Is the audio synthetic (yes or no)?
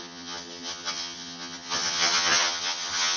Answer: yes